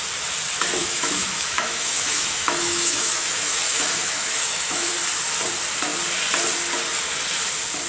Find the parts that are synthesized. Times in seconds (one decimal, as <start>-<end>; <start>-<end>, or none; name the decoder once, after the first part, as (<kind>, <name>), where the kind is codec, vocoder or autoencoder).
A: 0.8-4.9 (autoencoder, DAC-VAE)